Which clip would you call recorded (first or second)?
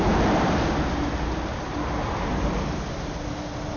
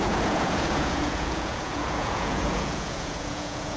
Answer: first